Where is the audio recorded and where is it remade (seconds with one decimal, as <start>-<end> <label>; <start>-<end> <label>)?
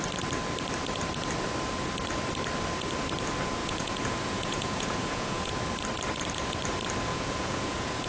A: 0.0-3.6 recorded; 3.6-5.5 remade; 5.5-7.1 recorded; 7.1-8.1 remade